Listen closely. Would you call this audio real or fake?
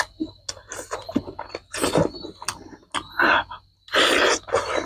real